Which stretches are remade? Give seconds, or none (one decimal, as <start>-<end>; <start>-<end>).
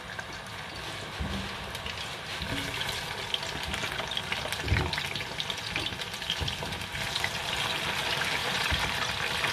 8.4-9.1